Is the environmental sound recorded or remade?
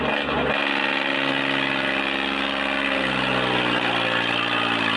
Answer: recorded